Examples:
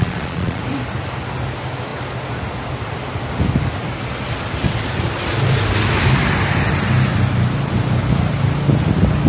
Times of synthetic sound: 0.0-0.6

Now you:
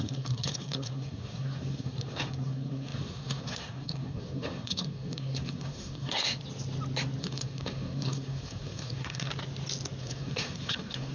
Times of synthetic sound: 0.0-6.4; 7.2-9.3; 10.0-11.1